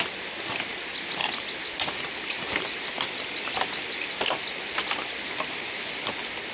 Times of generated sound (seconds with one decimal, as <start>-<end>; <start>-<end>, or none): none